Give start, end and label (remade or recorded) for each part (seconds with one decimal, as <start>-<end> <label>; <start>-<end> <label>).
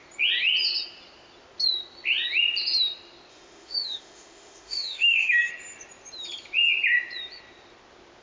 0.0-3.3 recorded; 3.3-5.5 remade; 5.5-8.2 recorded